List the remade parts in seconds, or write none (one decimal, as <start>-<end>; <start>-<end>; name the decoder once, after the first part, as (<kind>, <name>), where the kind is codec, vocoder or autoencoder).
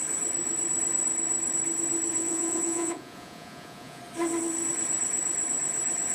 2.1-4.0 (vocoder, Vocos)